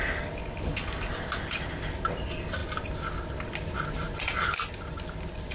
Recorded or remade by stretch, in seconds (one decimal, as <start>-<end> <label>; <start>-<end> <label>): 0.0-0.4 recorded; 0.4-1.1 remade; 1.1-5.5 recorded